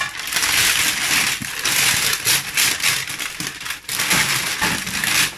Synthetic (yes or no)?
no